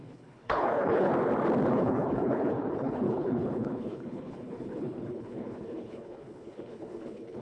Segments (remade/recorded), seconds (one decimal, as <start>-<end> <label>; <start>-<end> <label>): 0.0-1.1 remade; 1.1-1.7 recorded; 1.7-7.4 remade